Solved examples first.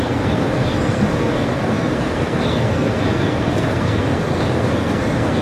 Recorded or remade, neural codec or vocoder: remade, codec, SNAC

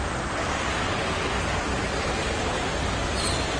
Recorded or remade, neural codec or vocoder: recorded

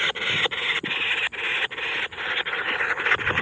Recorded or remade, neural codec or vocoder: recorded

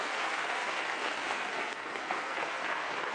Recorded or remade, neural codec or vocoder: remade, codec, SNAC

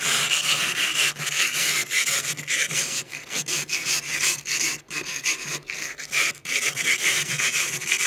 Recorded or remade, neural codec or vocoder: remade, codec, SNAC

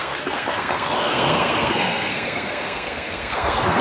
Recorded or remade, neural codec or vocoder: remade, codec, SNAC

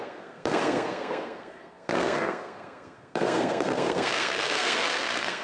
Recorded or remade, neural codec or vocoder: remade, codec, SNAC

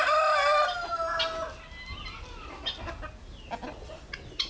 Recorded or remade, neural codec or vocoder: recorded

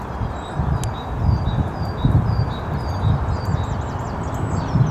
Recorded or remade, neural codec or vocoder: recorded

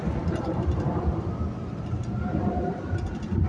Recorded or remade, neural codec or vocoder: recorded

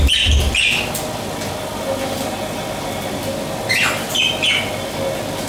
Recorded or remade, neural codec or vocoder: recorded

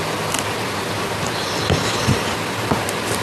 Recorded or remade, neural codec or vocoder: recorded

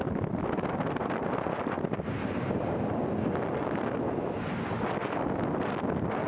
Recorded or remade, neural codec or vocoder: recorded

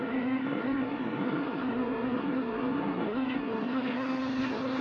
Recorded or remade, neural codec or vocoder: remade, codec, SNAC